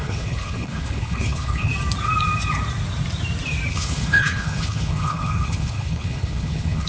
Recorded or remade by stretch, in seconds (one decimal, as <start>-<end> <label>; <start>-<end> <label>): 0.0-1.7 remade; 1.7-3.7 recorded; 3.7-6.9 remade